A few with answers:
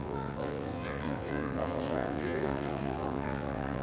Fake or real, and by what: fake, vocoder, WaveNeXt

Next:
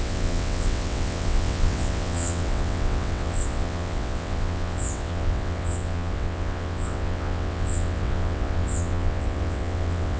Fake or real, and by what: fake, vocoder, WaveNeXt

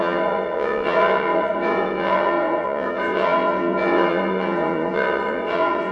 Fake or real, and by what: fake, vocoder, WaveNeXt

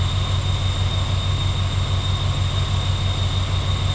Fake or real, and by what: real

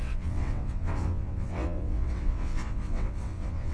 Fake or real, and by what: fake, vocoder, WaveNeXt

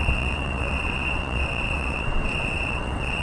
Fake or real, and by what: fake, vocoder, WaveNeXt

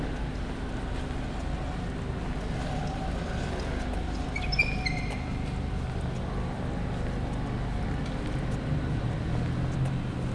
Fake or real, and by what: real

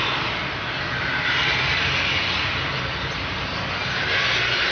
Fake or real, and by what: real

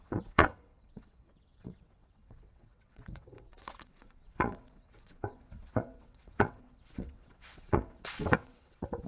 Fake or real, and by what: fake, vocoder, WaveNeXt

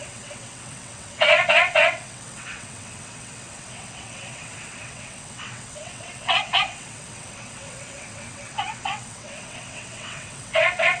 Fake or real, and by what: fake, vocoder, WaveNeXt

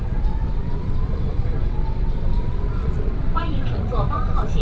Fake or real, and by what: fake, vocoder, WaveNeXt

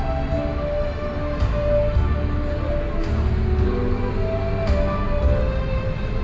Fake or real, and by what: real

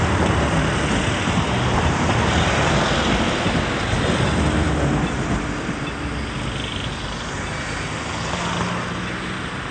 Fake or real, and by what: real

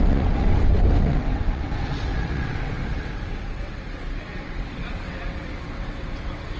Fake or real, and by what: fake, vocoder, WaveNeXt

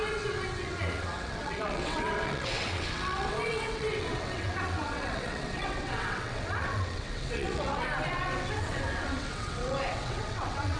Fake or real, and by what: fake, vocoder, WaveNeXt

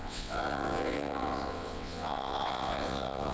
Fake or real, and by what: fake, vocoder, WaveNeXt